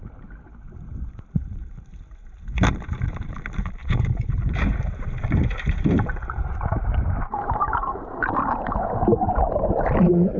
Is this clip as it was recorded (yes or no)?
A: no